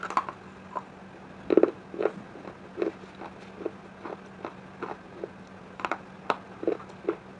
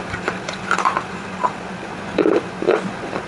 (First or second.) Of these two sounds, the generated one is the second